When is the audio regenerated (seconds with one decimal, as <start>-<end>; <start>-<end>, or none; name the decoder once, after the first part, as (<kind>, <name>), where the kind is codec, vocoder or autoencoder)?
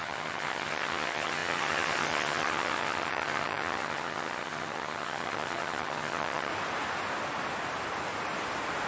0.0-6.5 (vocoder, HiFi-GAN)